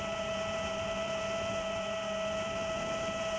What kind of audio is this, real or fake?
fake